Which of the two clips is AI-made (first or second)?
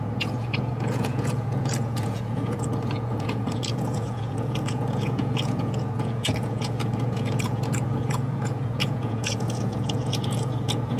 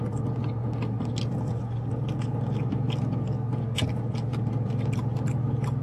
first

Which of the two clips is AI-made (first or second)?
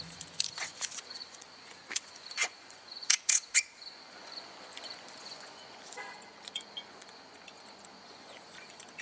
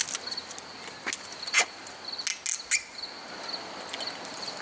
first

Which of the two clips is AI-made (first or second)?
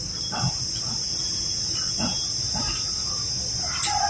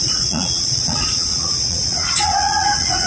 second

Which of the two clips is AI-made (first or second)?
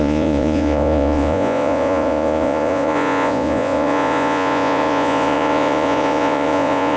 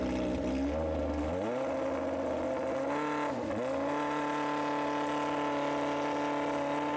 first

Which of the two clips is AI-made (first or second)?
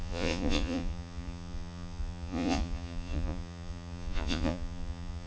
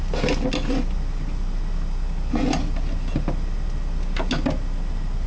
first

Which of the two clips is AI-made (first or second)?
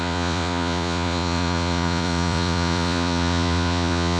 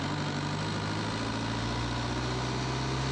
first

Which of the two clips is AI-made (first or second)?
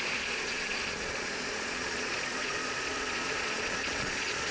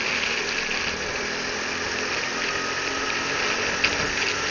first